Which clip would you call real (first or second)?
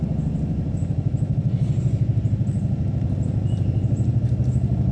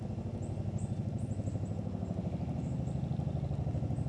second